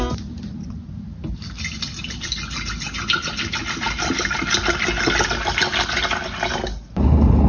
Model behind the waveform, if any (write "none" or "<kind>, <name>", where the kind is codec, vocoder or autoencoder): none